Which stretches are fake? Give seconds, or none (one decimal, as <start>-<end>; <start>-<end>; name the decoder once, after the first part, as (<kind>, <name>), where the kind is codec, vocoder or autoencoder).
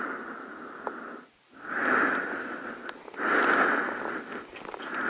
none